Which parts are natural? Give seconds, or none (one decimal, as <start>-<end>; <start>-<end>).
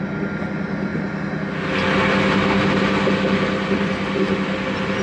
0.0-5.0